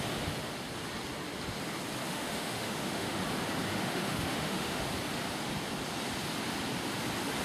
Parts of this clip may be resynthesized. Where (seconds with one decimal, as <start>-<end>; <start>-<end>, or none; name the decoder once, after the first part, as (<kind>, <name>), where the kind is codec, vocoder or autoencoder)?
2.1-3.2 (autoencoder, DAC-VAE); 3.7-4.8